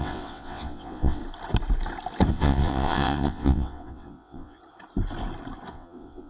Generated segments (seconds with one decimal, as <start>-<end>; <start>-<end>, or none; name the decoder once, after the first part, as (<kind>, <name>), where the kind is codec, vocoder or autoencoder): 0.0-1.2 (vocoder, WaveNeXt); 2.3-4.6; 5.7-6.3